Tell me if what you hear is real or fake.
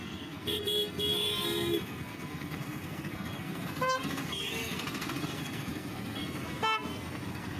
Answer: fake